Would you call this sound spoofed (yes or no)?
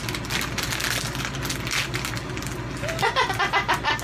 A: no